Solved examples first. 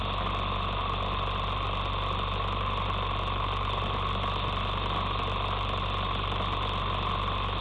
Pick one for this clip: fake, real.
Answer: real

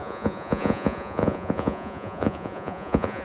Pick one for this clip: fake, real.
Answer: fake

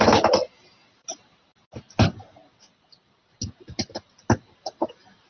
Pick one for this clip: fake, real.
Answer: real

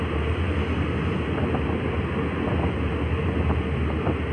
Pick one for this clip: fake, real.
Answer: real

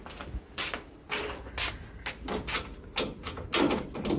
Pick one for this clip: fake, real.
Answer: real